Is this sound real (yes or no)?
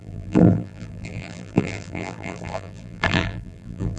no